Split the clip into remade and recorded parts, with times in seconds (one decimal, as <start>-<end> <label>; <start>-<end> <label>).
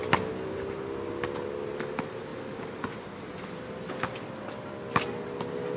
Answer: 0.0-5.8 recorded